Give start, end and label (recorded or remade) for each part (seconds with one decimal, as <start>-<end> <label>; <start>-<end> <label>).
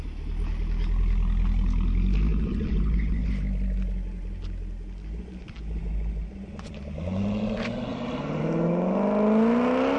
0.0-2.3 recorded; 2.3-3.3 remade; 3.3-5.8 recorded; 5.8-6.8 remade; 6.8-10.0 recorded